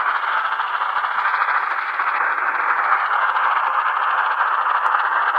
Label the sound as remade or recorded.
recorded